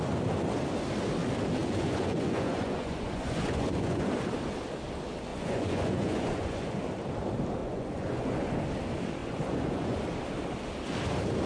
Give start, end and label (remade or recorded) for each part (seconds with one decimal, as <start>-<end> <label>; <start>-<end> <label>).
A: 0.0-1.6 recorded; 1.6-4.1 remade; 4.1-5.3 recorded; 5.3-6.8 remade; 6.8-7.6 recorded; 7.6-8.5 remade; 8.5-9.2 recorded; 9.2-10.0 remade; 10.0-11.5 recorded